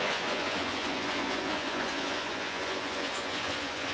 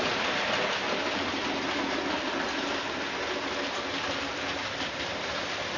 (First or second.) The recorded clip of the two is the second